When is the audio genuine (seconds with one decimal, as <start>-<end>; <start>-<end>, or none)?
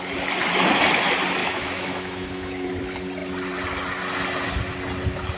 0.0-1.4; 2.7-5.4